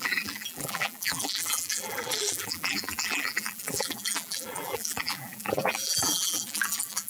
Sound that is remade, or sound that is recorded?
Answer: remade